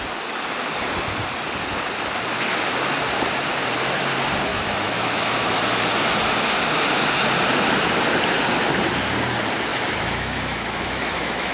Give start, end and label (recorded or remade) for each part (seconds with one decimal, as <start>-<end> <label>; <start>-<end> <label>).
0.0-4.5 recorded; 4.5-5.5 remade; 5.5-9.7 recorded; 9.7-11.5 remade